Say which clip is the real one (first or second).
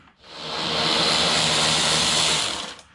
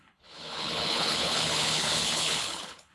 first